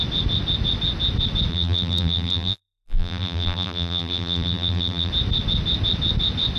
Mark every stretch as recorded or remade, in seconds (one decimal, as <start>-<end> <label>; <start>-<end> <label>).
0.0-1.5 recorded; 1.5-5.1 remade; 5.1-6.6 recorded